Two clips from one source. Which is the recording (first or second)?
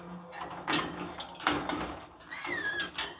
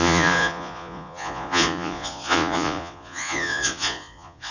first